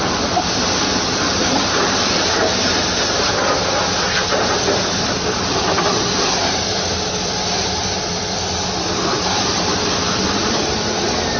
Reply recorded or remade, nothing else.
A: remade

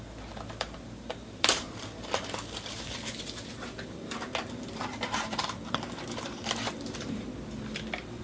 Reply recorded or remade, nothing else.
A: remade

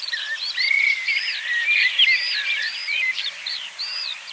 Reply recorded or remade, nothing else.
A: remade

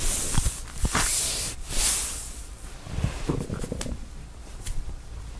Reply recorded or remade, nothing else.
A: remade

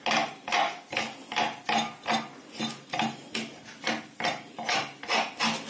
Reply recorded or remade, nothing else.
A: recorded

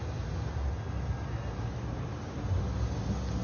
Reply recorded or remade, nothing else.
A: recorded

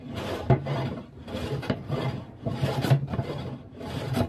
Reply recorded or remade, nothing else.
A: remade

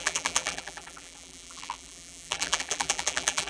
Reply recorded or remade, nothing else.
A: remade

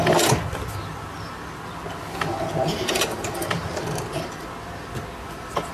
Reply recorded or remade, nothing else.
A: recorded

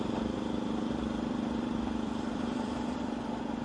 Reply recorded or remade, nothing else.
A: remade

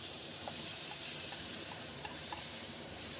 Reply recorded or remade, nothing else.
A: remade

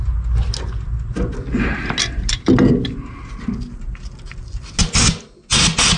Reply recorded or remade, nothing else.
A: recorded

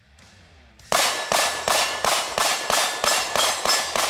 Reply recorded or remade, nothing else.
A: remade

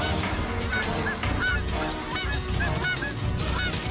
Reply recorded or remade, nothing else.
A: recorded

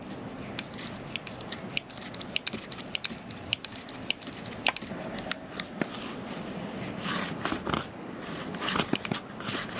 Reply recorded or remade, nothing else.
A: recorded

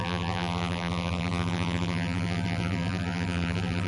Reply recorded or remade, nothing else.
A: remade